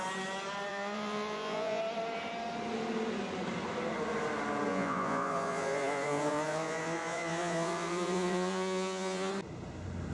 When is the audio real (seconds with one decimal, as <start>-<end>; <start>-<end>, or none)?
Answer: 0.0-0.7; 1.8-4.7; 9.3-10.1